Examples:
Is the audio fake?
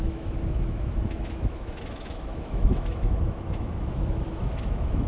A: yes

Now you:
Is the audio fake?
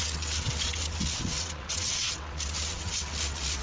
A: yes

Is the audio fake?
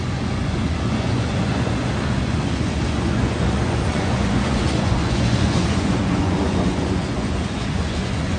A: yes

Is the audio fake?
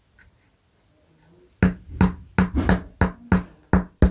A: no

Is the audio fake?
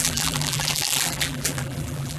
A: yes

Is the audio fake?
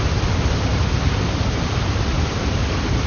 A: no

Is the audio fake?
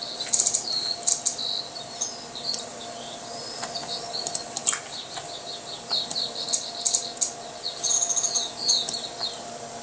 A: no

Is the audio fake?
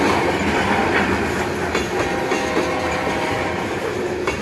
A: no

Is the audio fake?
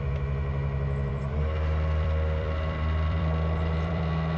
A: yes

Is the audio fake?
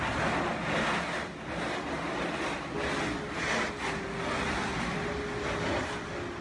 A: no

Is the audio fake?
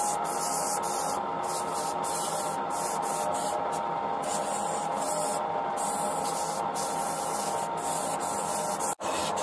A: no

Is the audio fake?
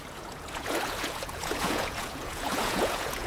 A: yes